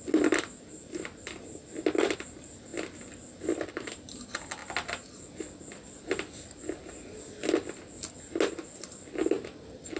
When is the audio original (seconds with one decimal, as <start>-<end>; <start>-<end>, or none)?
0.0-10.0